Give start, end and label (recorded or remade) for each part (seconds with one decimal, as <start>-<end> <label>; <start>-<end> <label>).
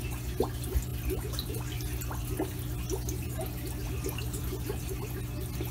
0.0-5.7 recorded